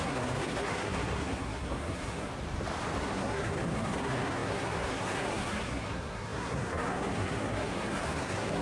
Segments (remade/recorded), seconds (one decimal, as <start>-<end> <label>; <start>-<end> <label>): 0.0-2.3 remade; 2.3-3.0 recorded; 3.0-8.6 remade